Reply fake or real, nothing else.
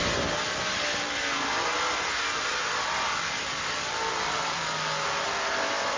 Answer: real